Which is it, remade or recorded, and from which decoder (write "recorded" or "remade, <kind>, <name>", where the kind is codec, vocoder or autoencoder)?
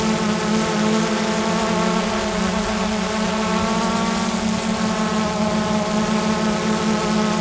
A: recorded